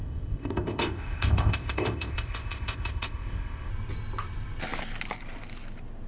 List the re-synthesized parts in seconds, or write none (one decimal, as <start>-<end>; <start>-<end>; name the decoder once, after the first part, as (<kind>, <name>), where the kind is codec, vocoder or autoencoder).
0.0-3.7 (codec, ZipCodec)